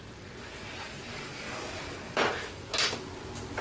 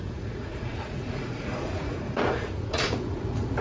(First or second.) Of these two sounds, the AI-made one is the second